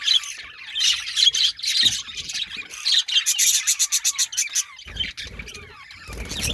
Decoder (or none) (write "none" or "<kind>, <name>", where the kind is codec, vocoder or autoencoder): none